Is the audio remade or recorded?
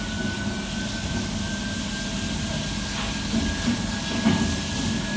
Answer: recorded